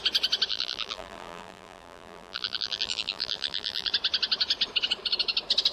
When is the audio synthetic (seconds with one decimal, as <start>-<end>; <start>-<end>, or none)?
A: 0.5-3.9

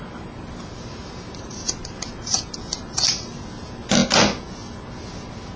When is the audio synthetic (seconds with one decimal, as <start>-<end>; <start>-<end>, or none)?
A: 0.7-3.3

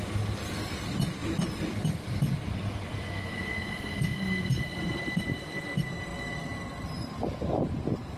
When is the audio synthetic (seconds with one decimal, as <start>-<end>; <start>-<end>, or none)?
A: 1.2-3.7

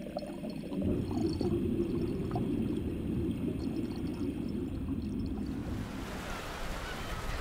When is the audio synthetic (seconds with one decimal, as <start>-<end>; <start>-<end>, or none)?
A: 1.2-3.6; 4.1-4.8

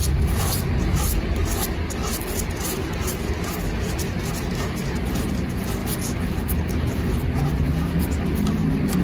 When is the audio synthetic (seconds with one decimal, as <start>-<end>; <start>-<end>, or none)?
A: none

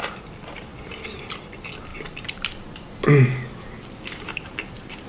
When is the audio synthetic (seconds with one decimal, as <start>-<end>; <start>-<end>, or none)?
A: 1.9-5.1

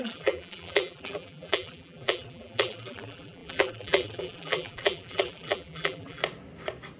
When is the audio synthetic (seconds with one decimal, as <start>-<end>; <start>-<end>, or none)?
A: 0.0-6.2